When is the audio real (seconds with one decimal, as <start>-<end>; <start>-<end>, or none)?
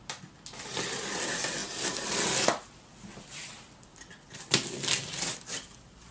0.0-6.1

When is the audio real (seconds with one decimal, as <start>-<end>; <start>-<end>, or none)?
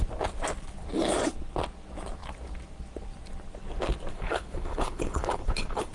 0.0-4.1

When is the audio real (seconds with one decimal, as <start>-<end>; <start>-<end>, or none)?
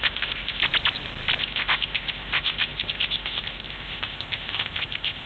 0.6-1.4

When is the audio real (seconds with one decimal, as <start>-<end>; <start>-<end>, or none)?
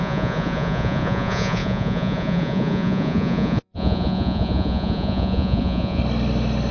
6.0-6.7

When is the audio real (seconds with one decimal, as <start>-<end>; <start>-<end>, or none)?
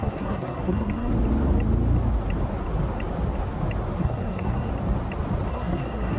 1.1-4.0; 4.7-5.5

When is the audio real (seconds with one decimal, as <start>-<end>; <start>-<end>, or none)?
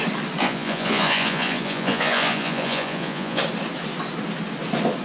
0.0-0.4; 3.4-5.0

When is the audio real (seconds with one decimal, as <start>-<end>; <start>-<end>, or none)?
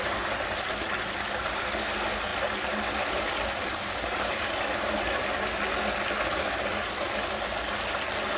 0.0-8.4